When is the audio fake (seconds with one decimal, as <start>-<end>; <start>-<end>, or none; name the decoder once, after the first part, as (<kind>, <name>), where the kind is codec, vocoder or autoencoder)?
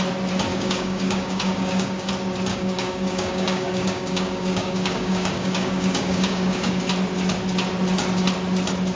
0.5-2.1 (codec, DAC); 2.5-6.8